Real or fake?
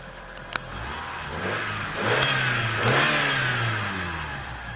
real